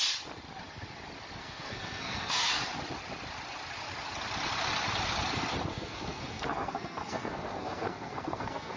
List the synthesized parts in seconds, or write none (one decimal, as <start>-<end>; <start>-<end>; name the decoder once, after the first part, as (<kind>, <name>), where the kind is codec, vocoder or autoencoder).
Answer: 1.4-2.5 (codec, SNAC); 5.7-8.8